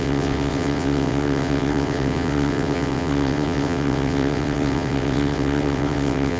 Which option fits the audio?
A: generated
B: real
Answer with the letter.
A